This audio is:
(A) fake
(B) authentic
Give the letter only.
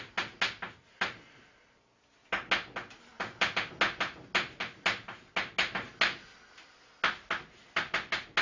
B